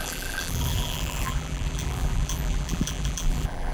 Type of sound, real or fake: fake